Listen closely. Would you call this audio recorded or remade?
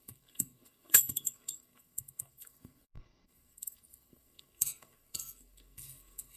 remade